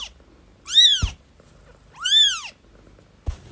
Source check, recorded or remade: recorded